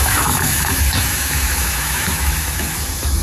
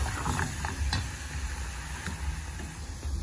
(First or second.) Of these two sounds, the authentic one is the second